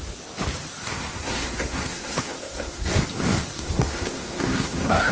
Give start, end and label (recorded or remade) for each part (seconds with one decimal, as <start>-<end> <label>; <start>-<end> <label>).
0.0-0.9 recorded; 0.9-3.0 remade; 3.0-3.5 recorded; 3.5-5.1 remade